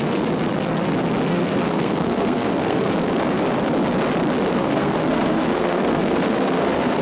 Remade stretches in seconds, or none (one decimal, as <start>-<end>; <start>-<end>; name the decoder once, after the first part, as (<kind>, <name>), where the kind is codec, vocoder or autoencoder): 1.3-2.9 (codec, SNAC); 4.5-7.0